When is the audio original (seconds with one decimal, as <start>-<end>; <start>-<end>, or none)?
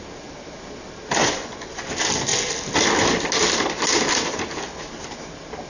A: 0.0-1.2; 1.9-5.7